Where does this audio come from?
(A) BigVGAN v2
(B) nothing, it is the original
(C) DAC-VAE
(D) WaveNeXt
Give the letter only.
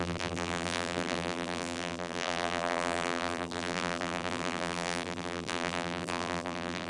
A